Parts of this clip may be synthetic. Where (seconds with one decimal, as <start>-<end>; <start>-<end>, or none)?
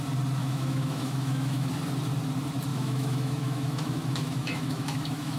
0.4-1.7; 2.7-5.4